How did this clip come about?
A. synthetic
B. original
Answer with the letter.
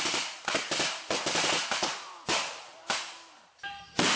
B